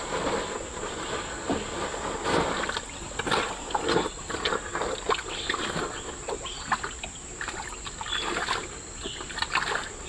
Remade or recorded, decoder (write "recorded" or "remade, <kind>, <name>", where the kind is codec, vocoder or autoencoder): recorded